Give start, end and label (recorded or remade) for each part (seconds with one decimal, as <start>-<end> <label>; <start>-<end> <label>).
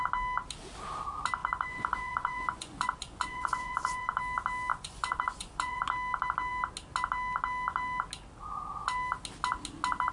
0.0-1.4 recorded; 1.4-4.2 remade; 4.2-4.7 recorded; 4.7-5.8 remade; 5.8-10.1 recorded